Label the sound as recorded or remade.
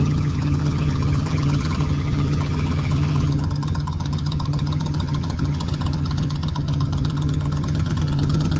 remade